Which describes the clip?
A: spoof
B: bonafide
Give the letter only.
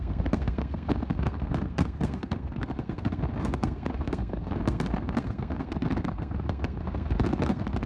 A